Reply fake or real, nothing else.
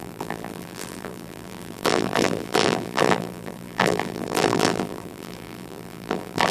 fake